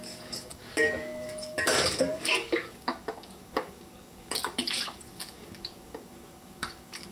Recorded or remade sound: remade